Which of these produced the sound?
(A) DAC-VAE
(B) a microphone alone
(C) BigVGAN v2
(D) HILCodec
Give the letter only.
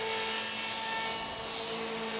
B